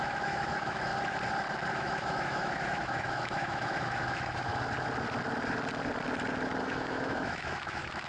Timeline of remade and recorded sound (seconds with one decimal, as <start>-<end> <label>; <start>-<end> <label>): 0.0-0.9 remade; 0.9-1.7 recorded; 1.7-4.5 remade; 4.5-6.6 recorded; 6.6-8.1 remade